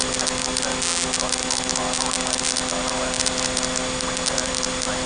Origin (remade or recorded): recorded